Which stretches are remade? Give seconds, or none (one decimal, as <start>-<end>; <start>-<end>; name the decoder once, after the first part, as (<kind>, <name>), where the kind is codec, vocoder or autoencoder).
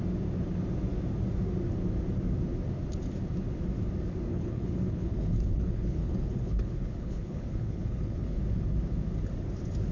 4.3-8.4 (codec, HILCodec)